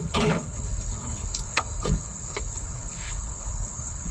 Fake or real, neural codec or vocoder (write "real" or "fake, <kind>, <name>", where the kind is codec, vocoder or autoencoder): fake, codec, HILCodec